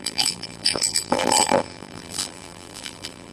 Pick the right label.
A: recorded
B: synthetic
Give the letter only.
B